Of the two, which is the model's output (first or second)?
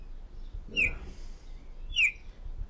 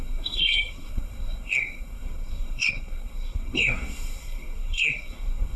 second